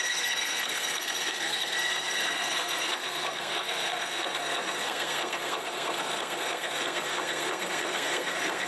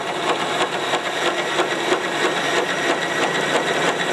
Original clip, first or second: second